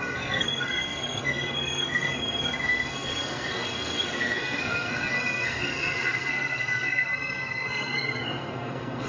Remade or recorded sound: remade